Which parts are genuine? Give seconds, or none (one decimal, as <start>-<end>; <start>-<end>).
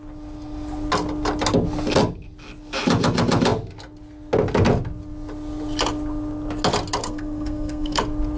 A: 0.0-7.0; 8.0-8.4